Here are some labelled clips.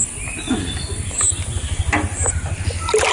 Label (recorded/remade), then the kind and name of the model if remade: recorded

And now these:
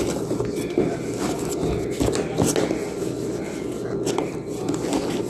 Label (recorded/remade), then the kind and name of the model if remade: recorded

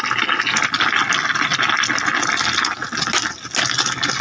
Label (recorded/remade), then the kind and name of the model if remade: recorded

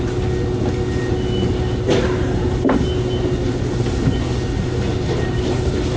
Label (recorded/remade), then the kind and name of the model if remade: recorded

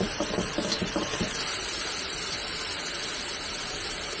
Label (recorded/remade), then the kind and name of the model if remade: remade, vocoder, BigVGAN v2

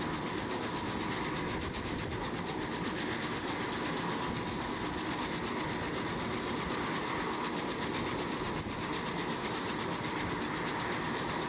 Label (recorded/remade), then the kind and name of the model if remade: recorded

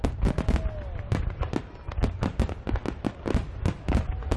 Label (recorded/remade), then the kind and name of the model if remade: recorded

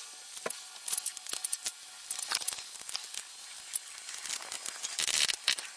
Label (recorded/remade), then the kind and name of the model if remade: recorded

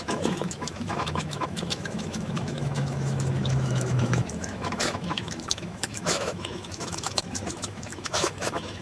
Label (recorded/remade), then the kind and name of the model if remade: remade, autoencoder, DAC-VAE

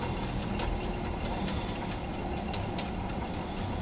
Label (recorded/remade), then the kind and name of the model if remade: recorded